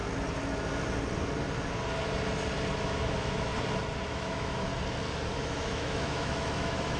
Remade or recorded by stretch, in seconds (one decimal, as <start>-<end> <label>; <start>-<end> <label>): 0.0-2.8 recorded; 2.8-3.5 remade; 3.5-4.1 recorded; 4.1-4.7 remade; 4.7-5.3 recorded; 5.3-7.0 remade